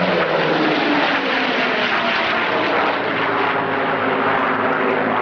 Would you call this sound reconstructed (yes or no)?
no